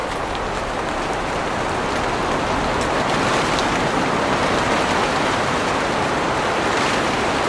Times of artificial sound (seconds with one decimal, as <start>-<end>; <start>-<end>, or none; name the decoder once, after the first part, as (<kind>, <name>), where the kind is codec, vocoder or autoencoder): none